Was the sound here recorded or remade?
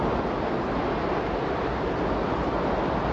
recorded